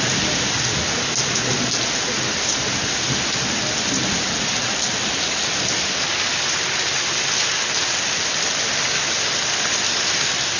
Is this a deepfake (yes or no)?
no